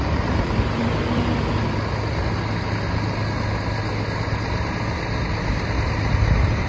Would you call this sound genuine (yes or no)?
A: yes